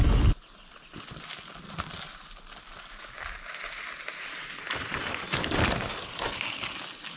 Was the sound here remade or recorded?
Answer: recorded